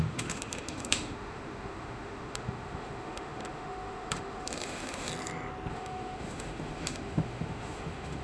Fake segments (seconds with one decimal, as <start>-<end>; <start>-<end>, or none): 0.0-5.1; 5.7-8.2